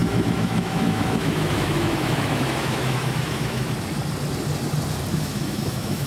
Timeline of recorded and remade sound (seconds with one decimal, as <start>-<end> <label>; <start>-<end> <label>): 0.0-3.7 remade; 3.7-5.1 recorded; 5.1-6.1 remade